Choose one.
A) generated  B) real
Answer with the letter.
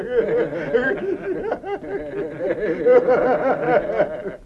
B